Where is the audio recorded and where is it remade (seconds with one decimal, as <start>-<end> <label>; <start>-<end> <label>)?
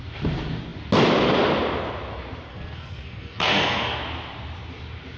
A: 0.0-2.5 recorded; 2.5-4.0 remade; 4.0-5.2 recorded